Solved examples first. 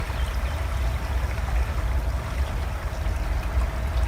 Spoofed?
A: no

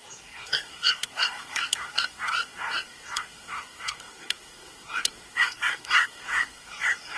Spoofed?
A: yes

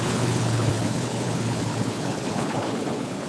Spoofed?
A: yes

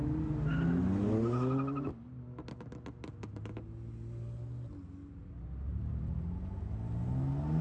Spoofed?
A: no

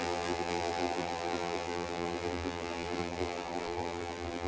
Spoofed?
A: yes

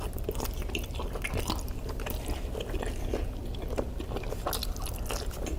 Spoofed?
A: no